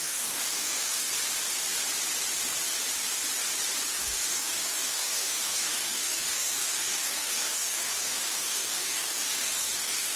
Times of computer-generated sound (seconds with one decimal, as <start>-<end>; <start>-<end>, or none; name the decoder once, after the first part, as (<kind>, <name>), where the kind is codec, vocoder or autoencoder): 0.0-1.1 (codec, DAC); 3.9-10.2